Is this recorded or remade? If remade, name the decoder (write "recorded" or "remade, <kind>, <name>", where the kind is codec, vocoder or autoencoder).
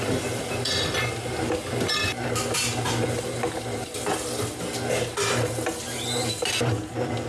recorded